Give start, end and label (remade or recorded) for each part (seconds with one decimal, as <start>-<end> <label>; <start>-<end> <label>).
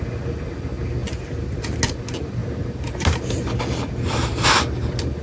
0.0-5.2 recorded